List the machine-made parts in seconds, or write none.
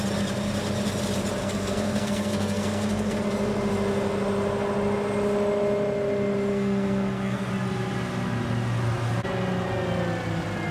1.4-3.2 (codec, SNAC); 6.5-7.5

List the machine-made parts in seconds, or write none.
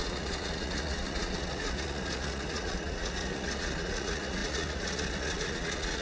0.0-6.0 (vocoder, Vocos)